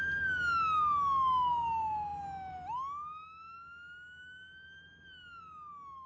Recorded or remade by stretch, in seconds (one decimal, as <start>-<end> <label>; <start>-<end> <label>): 0.0-6.1 recorded